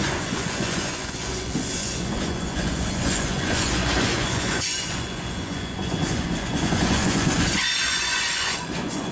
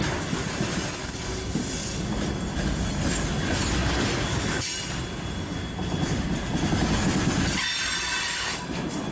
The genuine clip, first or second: second